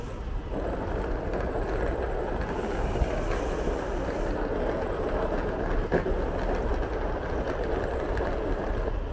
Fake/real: real